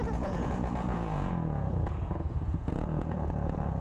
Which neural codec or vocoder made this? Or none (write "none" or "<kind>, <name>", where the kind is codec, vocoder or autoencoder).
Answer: vocoder, Vocos